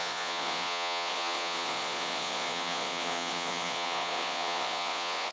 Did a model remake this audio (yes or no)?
yes